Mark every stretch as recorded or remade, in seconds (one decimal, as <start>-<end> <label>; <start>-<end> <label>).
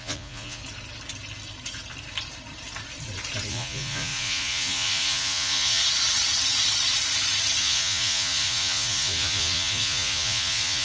0.0-0.6 remade; 0.6-3.5 recorded; 3.5-5.8 remade; 5.8-7.6 recorded; 7.6-10.8 remade